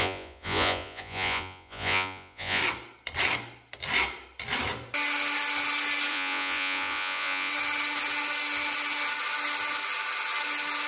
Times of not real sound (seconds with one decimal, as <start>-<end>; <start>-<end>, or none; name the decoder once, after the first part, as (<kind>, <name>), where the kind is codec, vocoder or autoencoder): 0.0-2.6 (vocoder, Vocos); 6.1-7.5